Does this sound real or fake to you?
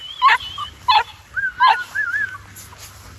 real